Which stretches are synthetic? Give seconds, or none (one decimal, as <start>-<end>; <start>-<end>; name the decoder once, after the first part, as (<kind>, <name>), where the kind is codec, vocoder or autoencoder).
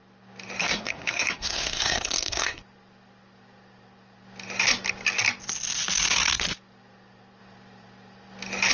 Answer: 0.6-2.6 (codec, SNAC)